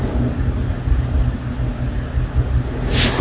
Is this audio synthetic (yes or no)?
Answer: no